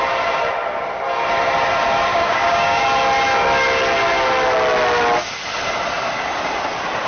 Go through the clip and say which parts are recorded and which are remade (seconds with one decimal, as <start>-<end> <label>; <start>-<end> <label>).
0.0-2.1 recorded; 2.1-2.8 remade; 2.8-7.1 recorded

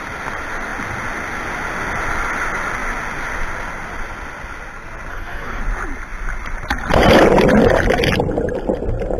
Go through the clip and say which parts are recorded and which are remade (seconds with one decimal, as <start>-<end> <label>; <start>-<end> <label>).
0.0-5.1 recorded; 5.1-5.6 remade; 5.6-9.2 recorded

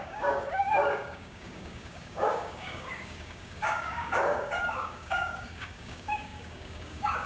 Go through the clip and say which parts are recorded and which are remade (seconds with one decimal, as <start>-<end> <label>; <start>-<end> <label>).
0.0-7.3 remade

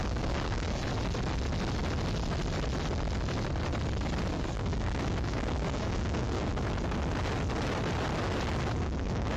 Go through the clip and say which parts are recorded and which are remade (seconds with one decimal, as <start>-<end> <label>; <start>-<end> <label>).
0.0-0.9 remade; 0.9-4.3 recorded; 4.3-6.5 remade; 6.5-8.8 recorded; 8.8-9.4 remade